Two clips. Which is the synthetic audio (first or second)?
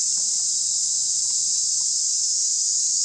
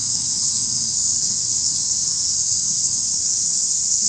second